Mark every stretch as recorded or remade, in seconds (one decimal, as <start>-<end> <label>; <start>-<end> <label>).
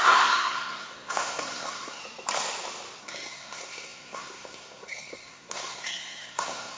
0.0-2.0 remade; 2.0-3.0 recorded; 3.0-6.8 remade